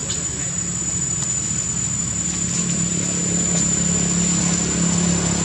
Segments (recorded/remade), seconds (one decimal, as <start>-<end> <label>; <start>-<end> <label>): 0.0-5.4 recorded